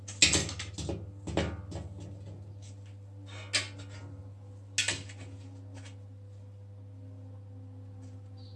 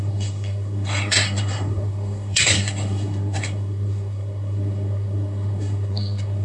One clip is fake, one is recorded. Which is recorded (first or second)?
first